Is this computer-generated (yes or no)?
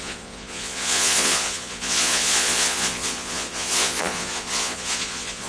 yes